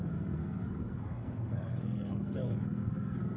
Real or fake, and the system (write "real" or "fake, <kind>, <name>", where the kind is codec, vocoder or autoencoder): fake, codec, SNAC